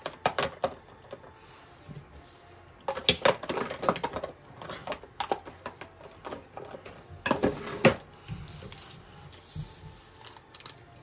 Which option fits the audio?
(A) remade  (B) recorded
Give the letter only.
B